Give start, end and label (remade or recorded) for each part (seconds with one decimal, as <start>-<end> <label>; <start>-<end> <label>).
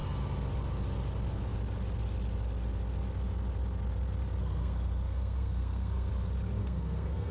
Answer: 0.0-4.4 recorded; 4.4-6.1 remade; 6.1-6.6 recorded; 6.6-7.3 remade